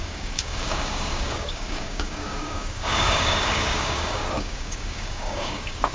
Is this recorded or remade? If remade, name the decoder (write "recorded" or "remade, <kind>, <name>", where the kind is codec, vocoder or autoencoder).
remade, codec, DAC